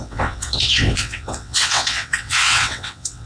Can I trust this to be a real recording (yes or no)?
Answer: no